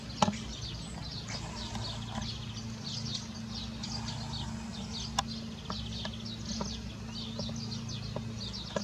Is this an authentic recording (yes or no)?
yes